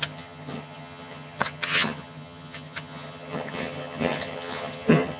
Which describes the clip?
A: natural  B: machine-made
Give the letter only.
B